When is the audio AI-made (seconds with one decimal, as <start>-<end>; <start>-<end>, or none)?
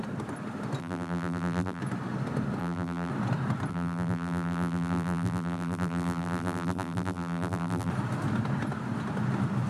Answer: 0.8-1.8; 2.6-3.1; 3.7-7.9